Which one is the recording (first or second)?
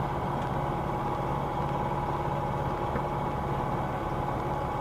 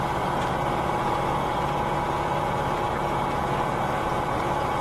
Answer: first